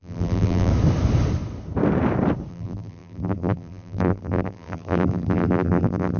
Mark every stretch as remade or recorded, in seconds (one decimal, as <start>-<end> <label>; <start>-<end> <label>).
0.0-0.7 remade; 0.7-2.5 recorded; 2.5-6.2 remade